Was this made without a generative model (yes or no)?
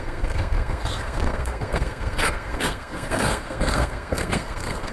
no